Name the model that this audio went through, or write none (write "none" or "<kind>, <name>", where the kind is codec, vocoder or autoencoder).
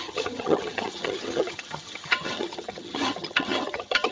vocoder, HiFi-GAN